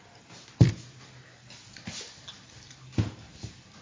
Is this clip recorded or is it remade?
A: recorded